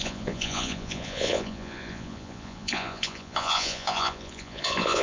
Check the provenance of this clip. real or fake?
fake